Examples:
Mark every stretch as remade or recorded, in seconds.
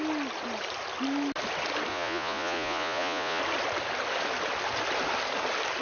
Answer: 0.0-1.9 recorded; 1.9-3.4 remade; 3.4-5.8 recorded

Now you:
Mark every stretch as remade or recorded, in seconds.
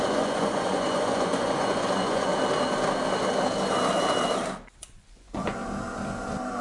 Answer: 0.0-2.3 remade; 2.3-4.8 recorded; 4.8-5.6 remade; 5.6-6.6 recorded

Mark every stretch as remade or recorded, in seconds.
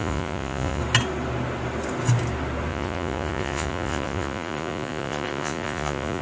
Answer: 0.0-0.8 remade; 0.8-2.7 recorded; 2.7-6.2 remade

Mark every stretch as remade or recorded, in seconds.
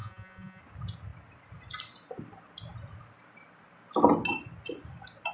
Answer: 0.0-0.6 remade; 0.6-5.3 recorded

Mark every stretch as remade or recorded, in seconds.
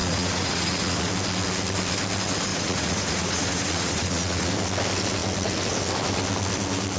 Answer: 0.0-1.1 remade; 1.1-2.5 recorded; 2.5-4.5 remade; 4.5-7.0 recorded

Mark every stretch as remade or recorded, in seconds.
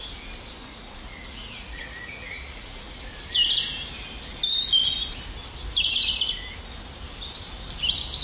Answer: 0.0-0.7 recorded; 0.7-3.0 remade; 3.0-8.2 recorded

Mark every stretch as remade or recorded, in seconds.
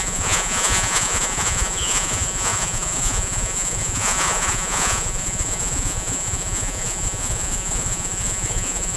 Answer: 0.0-9.0 remade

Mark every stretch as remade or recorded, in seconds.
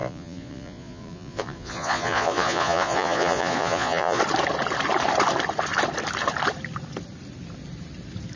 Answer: 0.0-4.2 remade; 4.2-8.4 recorded